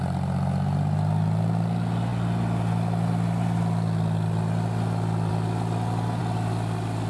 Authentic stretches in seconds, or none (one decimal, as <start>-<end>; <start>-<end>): 0.0-7.1